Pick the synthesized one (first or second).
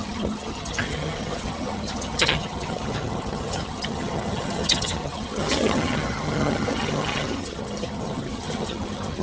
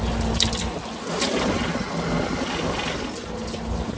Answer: first